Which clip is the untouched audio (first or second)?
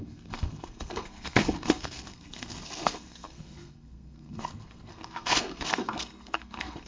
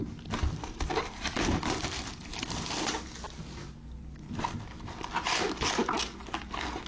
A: second